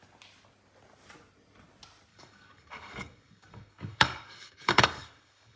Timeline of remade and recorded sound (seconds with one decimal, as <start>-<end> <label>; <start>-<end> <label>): 0.0-2.1 recorded; 2.1-5.6 remade